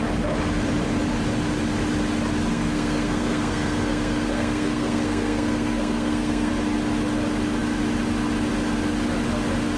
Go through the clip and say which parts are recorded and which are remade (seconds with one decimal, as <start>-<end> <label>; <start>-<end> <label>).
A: 0.0-2.5 recorded; 2.5-6.5 remade; 6.5-9.8 recorded

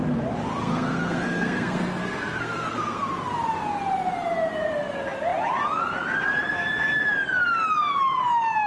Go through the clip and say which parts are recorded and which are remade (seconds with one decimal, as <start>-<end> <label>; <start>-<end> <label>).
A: 0.0-0.6 recorded; 0.6-3.1 remade; 3.1-8.7 recorded